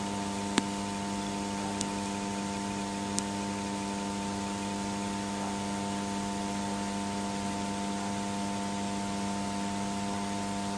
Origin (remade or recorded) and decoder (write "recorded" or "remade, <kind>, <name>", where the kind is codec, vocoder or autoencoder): recorded